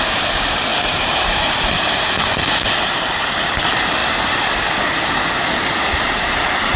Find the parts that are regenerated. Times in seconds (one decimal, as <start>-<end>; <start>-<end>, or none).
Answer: 0.7-2.3